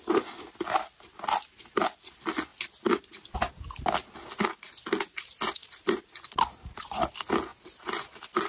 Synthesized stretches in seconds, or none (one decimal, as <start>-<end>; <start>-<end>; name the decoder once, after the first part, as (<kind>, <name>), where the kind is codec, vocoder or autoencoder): 5.6-7.0 (vocoder, BigVGAN v2); 7.5-8.1